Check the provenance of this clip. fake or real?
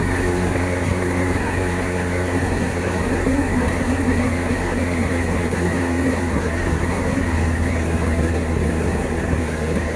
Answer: fake